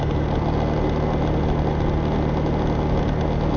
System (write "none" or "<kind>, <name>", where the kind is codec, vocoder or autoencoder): none